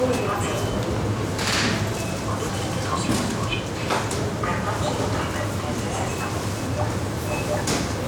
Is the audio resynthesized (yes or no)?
no